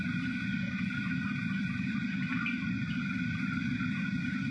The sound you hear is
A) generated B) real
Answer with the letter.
B